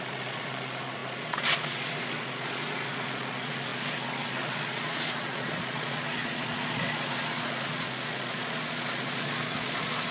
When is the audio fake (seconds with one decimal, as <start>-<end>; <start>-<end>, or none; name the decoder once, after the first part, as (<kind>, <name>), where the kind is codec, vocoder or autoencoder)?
0.0-10.1 (vocoder, Vocos)